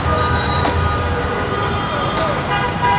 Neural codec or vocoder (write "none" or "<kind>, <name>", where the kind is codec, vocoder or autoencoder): vocoder, BigVGAN v2